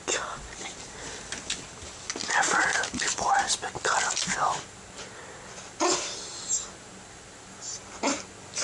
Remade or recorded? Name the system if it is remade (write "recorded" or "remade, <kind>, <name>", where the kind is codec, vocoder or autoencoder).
recorded